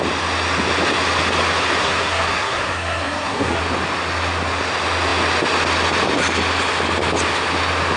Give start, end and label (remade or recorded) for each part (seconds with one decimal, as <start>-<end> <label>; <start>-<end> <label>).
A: 0.0-1.8 recorded; 1.8-3.6 remade; 3.6-8.0 recorded